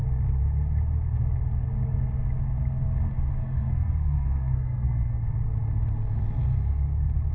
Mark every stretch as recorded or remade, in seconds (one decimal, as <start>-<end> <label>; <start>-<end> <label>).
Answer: 0.0-3.4 recorded; 3.4-5.2 remade; 5.2-7.3 recorded